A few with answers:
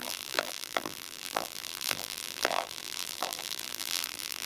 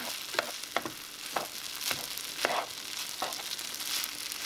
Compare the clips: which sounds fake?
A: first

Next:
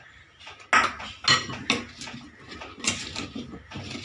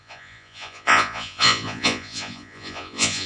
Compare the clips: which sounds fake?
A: second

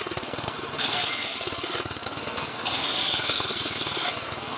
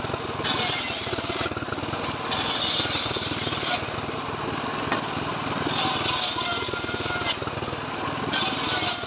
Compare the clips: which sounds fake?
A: first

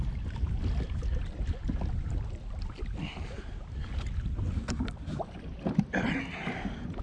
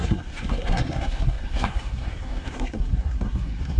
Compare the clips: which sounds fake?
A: second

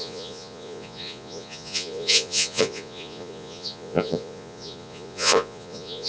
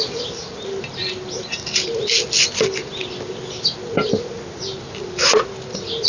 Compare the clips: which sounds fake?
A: first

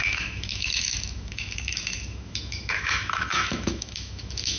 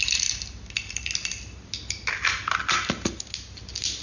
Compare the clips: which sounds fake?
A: first